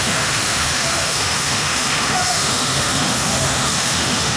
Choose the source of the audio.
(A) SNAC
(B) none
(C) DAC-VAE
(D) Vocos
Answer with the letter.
C